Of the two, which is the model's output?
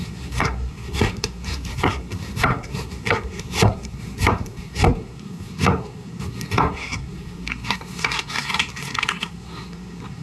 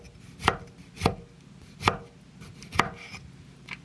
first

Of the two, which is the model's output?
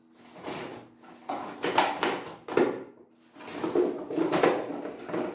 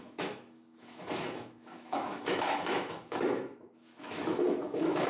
second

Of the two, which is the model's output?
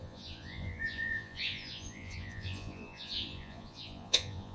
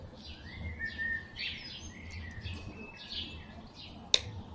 first